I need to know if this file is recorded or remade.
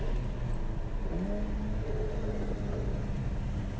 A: recorded